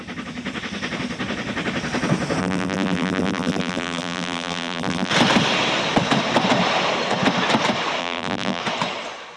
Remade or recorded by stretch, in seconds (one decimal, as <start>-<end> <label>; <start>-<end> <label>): 0.0-2.4 recorded; 2.4-5.1 remade; 5.1-8.0 recorded; 8.0-8.6 remade; 8.6-9.4 recorded